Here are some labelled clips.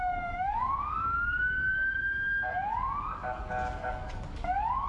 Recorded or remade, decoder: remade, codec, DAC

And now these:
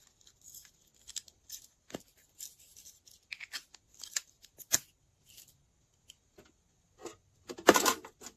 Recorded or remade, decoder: recorded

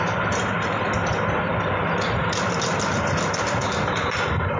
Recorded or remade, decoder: remade, vocoder, BigVGAN v2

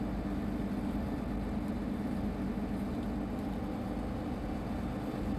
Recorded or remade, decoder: recorded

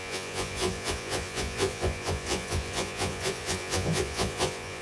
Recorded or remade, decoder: remade, vocoder, Vocos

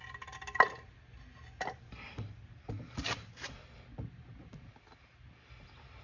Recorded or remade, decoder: recorded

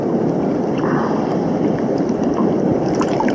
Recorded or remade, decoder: recorded